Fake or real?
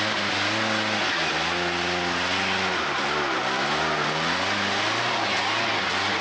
real